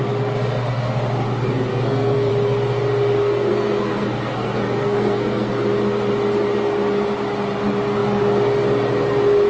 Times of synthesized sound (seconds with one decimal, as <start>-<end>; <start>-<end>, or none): 1.7-2.3; 3.2-5.5